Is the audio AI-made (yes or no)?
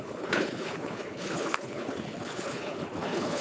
yes